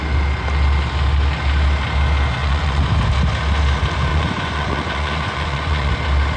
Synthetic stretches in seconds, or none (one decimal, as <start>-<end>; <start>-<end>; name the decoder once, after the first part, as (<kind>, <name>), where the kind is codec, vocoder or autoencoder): 2.4-2.9 (vocoder, Vocos); 4.1-5.9